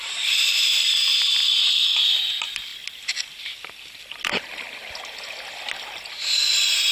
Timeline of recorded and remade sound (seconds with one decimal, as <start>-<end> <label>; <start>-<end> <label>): 0.0-6.9 recorded